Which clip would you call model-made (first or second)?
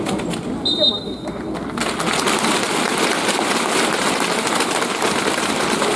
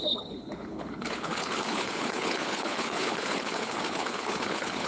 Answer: second